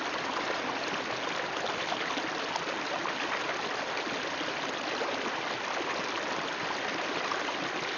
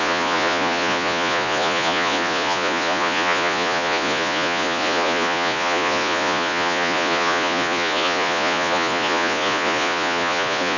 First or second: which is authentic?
first